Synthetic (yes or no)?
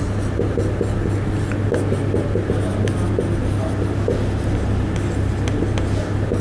no